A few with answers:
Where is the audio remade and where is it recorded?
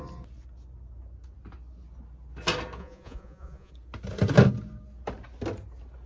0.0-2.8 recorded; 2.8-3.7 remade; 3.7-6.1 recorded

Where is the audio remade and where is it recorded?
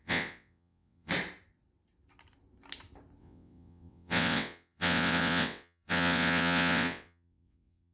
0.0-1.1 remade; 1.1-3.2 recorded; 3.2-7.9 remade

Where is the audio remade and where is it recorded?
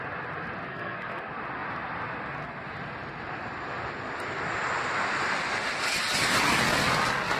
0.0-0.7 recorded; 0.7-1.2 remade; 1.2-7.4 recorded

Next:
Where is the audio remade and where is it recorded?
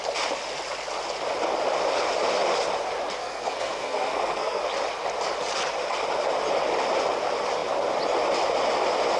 0.0-3.2 recorded; 3.2-4.6 remade; 4.6-9.2 recorded